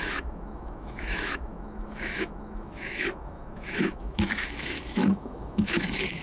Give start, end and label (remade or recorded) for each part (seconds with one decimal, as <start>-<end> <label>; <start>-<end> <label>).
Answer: 0.0-6.2 remade